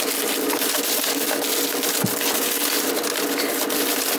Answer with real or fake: real